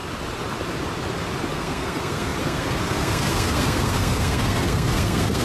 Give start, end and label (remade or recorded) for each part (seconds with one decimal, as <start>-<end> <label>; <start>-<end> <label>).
0.0-1.5 recorded; 1.5-5.4 remade